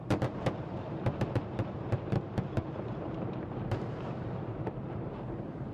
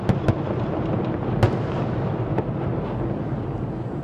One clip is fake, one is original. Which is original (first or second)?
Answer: second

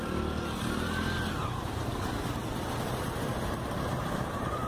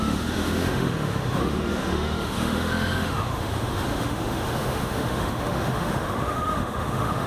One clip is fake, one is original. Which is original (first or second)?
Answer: first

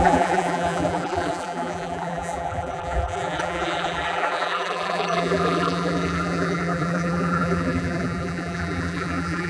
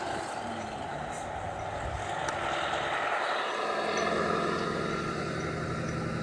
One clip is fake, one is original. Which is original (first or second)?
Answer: second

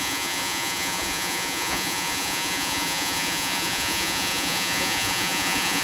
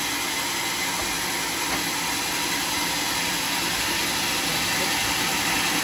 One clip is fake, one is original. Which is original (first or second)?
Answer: second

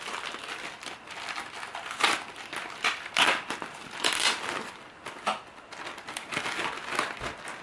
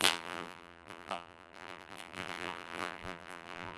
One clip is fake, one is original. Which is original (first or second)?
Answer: first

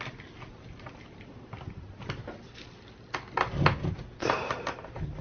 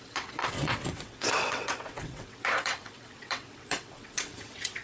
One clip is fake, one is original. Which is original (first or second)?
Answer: first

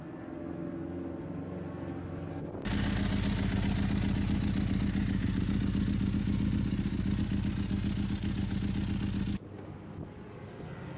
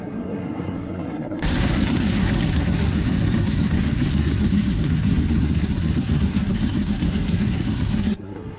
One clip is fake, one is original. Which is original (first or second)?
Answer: first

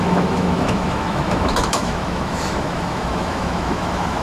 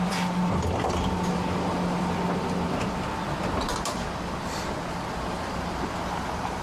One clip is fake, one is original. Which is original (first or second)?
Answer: second